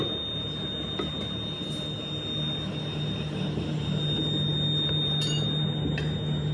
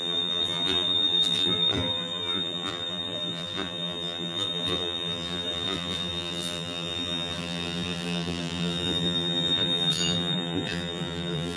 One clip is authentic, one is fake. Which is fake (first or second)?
second